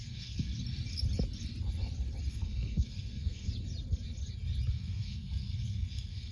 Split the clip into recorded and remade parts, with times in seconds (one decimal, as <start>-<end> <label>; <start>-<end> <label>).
0.0-0.5 remade; 0.5-2.3 recorded; 2.3-3.5 remade; 3.5-4.7 recorded; 4.7-6.3 remade

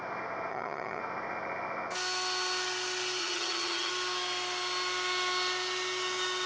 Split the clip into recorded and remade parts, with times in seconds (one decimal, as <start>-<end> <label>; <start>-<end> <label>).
0.0-0.5 recorded; 0.5-1.0 remade; 1.0-3.2 recorded; 3.2-3.9 remade; 3.9-6.5 recorded